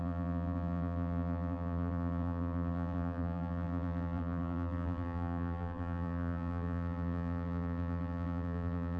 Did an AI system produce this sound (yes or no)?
yes